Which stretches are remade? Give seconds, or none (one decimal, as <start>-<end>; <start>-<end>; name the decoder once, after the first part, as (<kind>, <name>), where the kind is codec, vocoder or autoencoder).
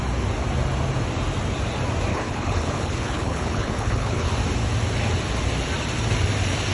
2.1-4.3 (codec, HILCodec)